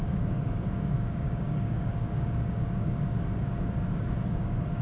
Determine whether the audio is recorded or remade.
remade